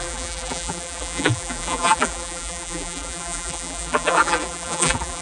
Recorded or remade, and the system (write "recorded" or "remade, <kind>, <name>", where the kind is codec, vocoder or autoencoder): remade, vocoder, BigVGAN v2